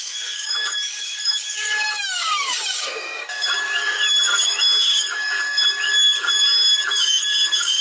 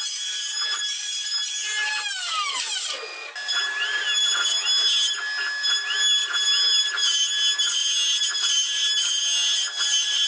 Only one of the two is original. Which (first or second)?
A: second